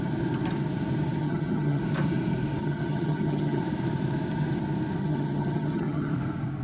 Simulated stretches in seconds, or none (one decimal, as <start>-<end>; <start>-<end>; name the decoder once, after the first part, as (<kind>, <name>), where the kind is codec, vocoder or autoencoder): 1.2-1.8 (vocoder, HiFi-GAN); 2.6-3.6; 5.0-6.1